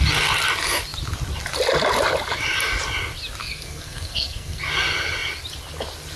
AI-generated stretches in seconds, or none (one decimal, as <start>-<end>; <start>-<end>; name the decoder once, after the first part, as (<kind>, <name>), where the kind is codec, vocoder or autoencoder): 3.4-4.6 (codec, SNAC)